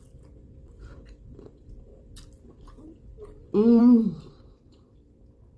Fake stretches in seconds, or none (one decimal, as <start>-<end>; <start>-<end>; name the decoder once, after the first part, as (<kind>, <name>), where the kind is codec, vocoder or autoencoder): none

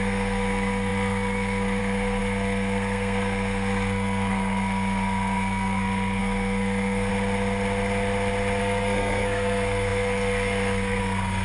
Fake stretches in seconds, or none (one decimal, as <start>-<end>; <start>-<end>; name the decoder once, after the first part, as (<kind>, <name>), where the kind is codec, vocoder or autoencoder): 0.0-7.1 (codec, SNAC); 8.6-11.4